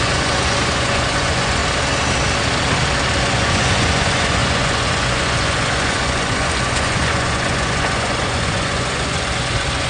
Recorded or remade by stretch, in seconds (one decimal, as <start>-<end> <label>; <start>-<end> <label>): 0.0-1.6 remade; 1.6-3.2 recorded; 3.2-9.9 remade